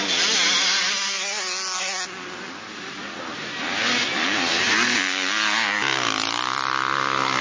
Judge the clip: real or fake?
real